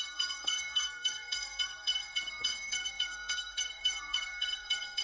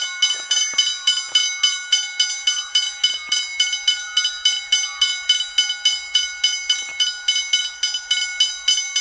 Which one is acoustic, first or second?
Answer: second